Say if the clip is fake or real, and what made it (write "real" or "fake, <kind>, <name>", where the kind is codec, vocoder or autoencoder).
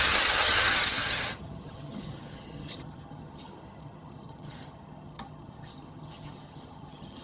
fake, vocoder, HiFi-GAN